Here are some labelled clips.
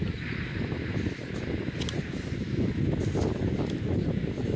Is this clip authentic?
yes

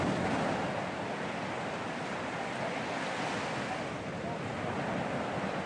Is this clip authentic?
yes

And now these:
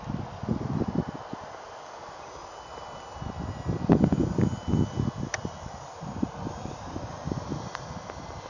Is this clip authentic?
yes